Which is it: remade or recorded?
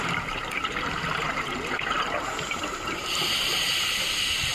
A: remade